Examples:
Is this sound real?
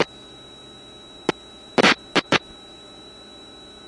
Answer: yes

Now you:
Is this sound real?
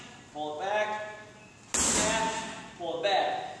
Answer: yes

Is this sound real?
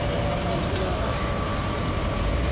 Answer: yes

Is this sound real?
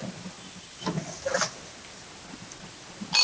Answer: yes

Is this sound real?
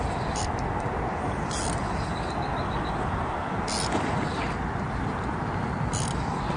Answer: yes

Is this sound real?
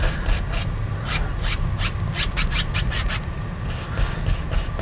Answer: yes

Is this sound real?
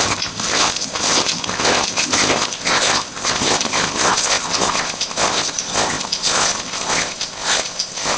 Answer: no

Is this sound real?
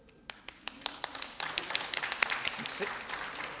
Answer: yes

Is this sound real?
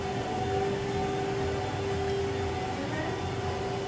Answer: yes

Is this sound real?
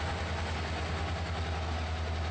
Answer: yes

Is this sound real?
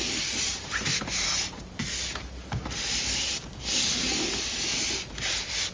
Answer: yes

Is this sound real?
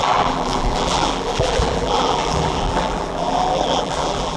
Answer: no